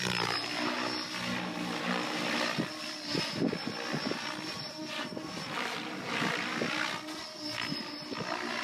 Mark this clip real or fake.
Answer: real